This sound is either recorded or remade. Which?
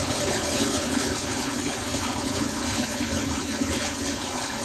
remade